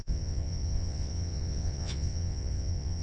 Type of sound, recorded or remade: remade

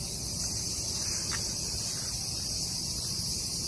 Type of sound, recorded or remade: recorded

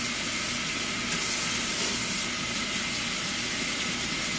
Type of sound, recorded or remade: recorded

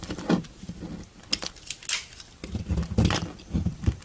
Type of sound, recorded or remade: recorded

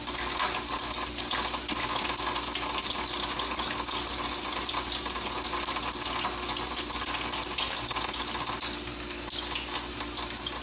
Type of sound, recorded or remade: recorded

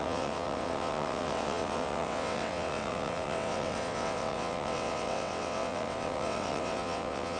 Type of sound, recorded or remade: remade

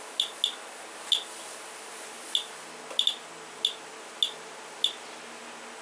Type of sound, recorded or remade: recorded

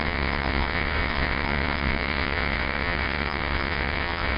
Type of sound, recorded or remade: remade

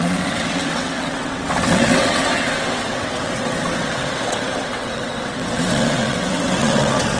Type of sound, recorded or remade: remade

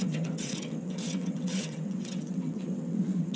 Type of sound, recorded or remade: remade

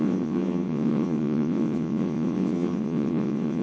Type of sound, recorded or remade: remade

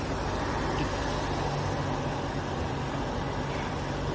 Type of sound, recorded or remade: recorded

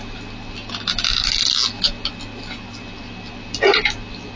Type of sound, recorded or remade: recorded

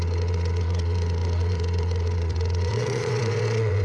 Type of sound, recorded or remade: remade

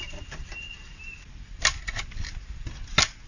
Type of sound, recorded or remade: recorded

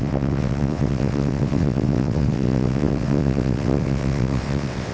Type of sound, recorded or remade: remade